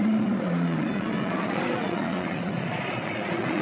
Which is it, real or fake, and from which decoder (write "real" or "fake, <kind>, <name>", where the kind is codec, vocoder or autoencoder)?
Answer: fake, vocoder, Vocos